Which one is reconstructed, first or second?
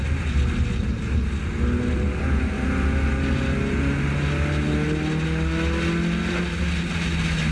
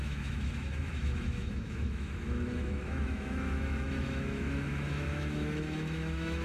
second